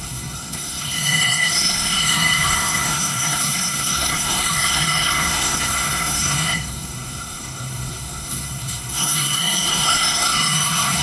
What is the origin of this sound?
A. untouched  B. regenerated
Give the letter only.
B